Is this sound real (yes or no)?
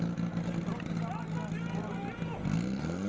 yes